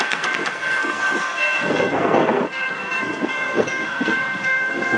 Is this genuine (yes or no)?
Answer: no